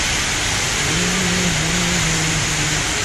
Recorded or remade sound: recorded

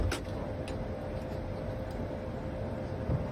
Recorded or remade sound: recorded